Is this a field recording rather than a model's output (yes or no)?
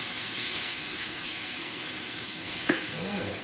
no